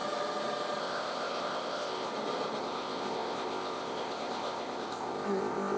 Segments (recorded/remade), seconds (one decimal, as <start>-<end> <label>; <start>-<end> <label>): 0.0-0.8 recorded; 0.8-2.1 remade; 2.1-2.6 recorded; 2.6-5.8 remade

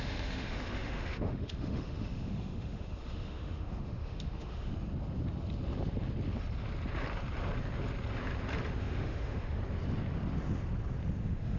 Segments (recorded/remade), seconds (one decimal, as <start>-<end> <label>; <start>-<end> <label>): 0.0-4.7 remade; 4.7-8.8 recorded; 8.8-9.6 remade; 9.6-11.2 recorded; 11.2-11.6 remade

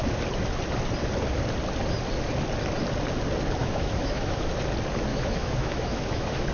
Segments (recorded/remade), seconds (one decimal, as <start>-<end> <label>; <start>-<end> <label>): 0.0-3.6 recorded; 3.6-4.5 remade; 4.5-5.1 recorded; 5.1-6.5 remade

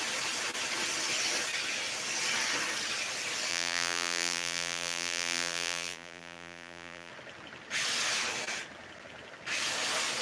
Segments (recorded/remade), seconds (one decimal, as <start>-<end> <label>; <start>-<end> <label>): 0.0-3.5 recorded; 3.5-7.1 remade; 7.1-10.2 recorded

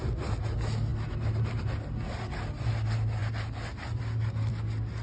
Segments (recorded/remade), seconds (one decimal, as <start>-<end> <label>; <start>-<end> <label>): 0.0-5.0 recorded

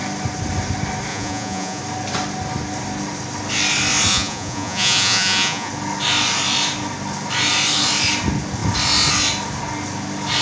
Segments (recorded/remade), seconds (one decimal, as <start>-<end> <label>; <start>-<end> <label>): 0.0-1.1 recorded; 1.1-1.8 remade; 1.8-4.1 recorded; 4.1-5.7 remade; 5.7-10.4 recorded

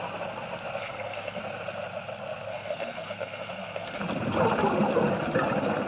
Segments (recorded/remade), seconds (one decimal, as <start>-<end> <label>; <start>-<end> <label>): 0.0-0.8 recorded; 0.8-1.4 remade; 1.4-2.5 recorded; 2.5-4.0 remade; 4.0-5.9 recorded